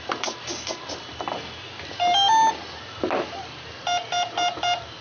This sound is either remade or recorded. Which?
recorded